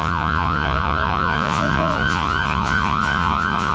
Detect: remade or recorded remade